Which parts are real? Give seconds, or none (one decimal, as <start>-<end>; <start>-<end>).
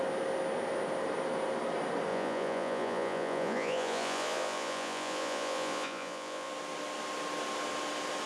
0.0-2.1; 6.5-8.3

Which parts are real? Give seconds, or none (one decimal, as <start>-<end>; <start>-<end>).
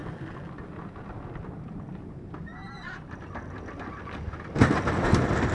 0.0-5.5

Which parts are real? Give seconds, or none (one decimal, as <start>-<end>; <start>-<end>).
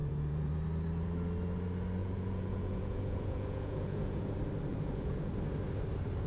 0.5-2.0; 4.3-4.7; 5.3-6.3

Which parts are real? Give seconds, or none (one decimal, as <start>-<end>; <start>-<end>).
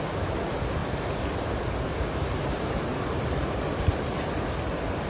0.0-5.1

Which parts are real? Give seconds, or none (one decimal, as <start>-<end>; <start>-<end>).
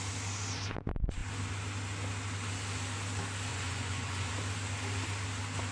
0.0-3.5; 4.3-5.7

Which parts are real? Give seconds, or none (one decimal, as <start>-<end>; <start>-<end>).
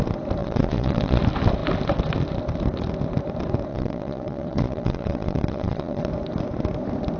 0.0-0.4; 1.2-3.7; 6.1-7.2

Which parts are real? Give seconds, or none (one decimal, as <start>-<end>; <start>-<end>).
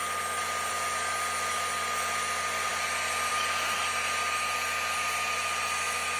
0.0-6.2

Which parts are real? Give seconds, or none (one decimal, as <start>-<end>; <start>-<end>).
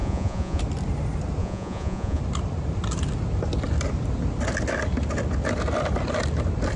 0.6-1.4; 2.2-6.8